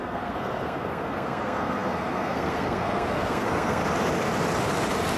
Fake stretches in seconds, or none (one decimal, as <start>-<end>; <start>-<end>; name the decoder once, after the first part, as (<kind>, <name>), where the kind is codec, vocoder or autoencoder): 0.0-3.8 (codec, SNAC)